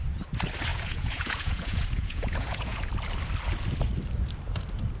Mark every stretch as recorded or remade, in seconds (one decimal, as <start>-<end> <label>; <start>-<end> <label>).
0.0-0.7 recorded; 0.7-2.9 remade; 2.9-5.0 recorded